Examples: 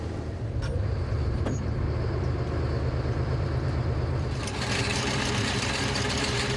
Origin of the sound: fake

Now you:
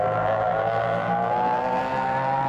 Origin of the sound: fake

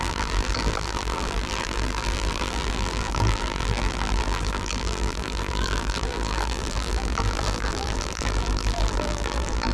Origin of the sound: fake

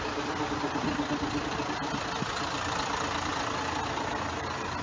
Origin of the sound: real